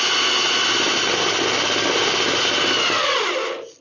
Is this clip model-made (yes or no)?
no